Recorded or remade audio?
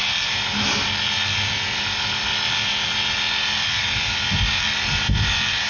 recorded